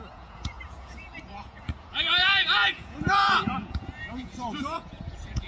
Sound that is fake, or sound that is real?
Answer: fake